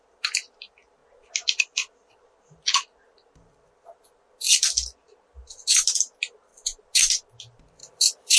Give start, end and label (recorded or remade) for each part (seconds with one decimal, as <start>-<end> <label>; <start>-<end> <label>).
0.0-7.8 recorded; 7.8-8.4 remade